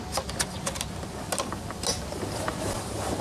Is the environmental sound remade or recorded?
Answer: recorded